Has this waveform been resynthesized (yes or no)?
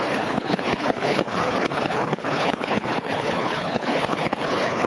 yes